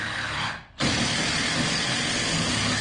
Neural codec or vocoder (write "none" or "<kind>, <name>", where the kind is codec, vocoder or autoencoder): none